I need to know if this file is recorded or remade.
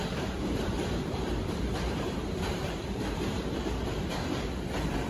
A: remade